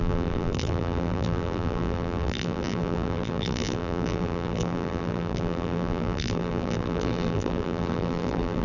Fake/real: fake